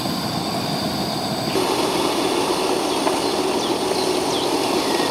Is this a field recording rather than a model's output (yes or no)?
yes